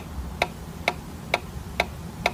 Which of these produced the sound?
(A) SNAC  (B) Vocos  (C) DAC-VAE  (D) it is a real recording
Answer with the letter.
D